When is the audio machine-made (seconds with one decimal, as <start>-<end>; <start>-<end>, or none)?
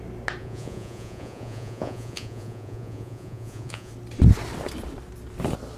0.4-3.9